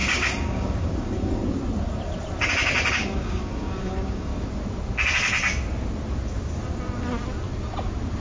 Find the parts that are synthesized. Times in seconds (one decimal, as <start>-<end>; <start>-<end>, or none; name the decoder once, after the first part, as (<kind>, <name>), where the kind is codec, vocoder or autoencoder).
0.0-1.4 (codec, DAC); 2.9-4.3